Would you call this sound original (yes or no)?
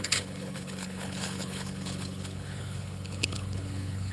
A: no